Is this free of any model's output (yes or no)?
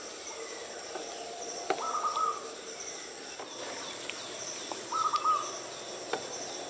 yes